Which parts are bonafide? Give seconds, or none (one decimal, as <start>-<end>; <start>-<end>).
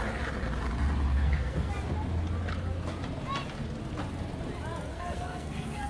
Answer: 0.0-1.1; 1.7-4.9